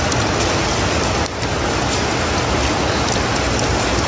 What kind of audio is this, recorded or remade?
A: recorded